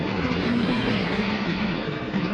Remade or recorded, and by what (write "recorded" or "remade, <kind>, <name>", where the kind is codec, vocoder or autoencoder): remade, codec, SNAC